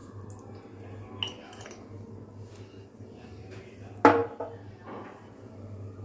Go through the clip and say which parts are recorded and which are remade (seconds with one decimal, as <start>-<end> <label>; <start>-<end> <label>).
0.0-6.0 recorded